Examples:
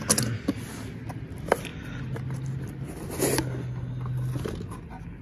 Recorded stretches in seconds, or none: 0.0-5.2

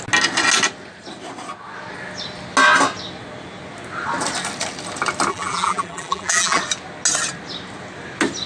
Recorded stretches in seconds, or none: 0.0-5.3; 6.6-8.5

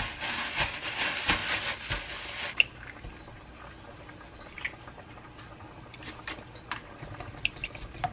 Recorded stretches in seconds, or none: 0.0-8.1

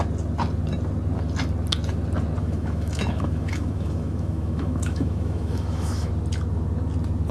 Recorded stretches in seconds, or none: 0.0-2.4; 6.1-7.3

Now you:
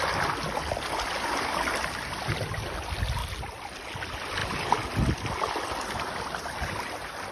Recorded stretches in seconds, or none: 0.0-7.3

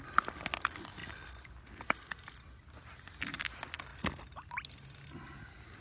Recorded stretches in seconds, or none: 0.0-5.8